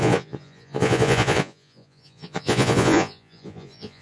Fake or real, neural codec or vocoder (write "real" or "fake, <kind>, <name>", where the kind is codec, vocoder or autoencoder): fake, vocoder, Vocos